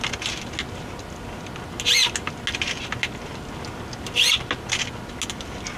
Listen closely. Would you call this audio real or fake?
real